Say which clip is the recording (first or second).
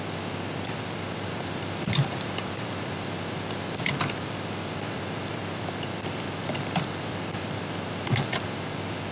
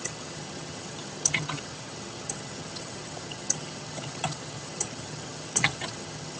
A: first